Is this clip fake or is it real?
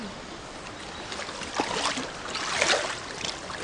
real